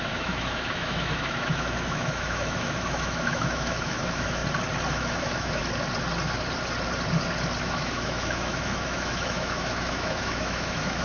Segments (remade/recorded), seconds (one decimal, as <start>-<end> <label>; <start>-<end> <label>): 0.0-4.4 remade; 4.4-4.9 recorded; 4.9-5.6 remade; 5.6-7.6 recorded; 7.6-11.0 remade